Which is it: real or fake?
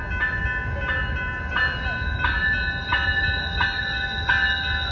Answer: real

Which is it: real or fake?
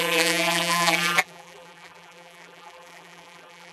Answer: fake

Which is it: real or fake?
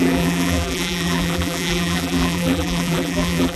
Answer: fake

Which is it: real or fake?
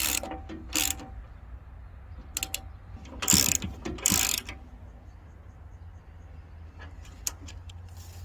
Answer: real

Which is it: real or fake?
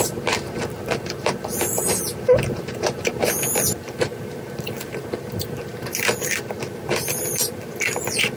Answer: fake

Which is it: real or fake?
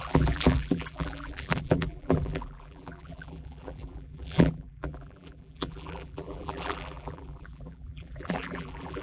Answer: fake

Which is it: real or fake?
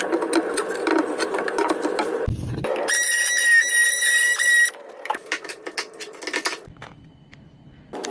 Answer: real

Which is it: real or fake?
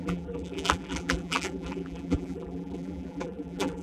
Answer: fake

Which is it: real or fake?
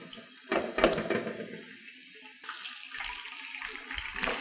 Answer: real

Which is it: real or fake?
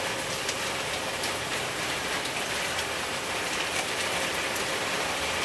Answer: fake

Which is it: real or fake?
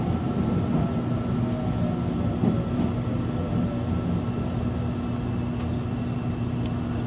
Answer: real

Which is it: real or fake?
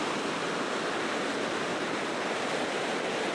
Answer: real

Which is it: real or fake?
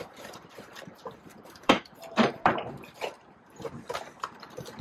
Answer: fake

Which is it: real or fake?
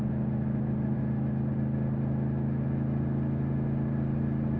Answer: real